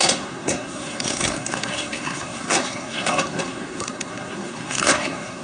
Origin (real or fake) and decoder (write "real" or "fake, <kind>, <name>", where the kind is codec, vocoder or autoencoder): fake, codec, SNAC